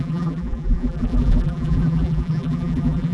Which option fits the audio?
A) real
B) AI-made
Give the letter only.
B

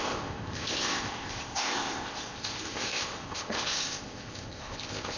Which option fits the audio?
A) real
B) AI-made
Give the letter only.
B